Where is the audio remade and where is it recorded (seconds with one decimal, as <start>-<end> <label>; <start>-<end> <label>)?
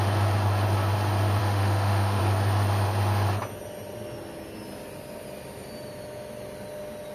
0.0-1.4 recorded; 1.4-2.2 remade; 2.2-7.1 recorded